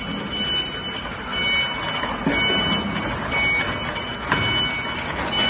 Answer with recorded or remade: recorded